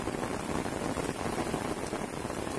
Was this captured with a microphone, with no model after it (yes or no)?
yes